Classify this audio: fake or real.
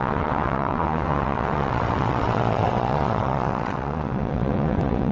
fake